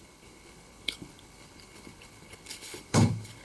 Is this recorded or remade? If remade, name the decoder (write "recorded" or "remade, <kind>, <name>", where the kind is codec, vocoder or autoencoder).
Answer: remade, codec, HILCodec